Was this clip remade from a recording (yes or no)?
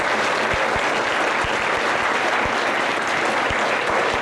no